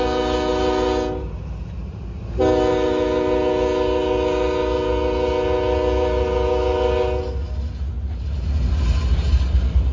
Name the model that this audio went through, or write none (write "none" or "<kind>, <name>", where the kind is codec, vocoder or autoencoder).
none